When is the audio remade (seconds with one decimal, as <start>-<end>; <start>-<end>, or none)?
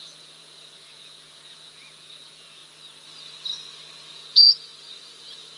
0.0-2.6; 4.1-5.6